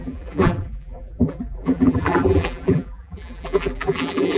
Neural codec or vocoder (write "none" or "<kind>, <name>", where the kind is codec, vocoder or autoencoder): vocoder, BigVGAN v2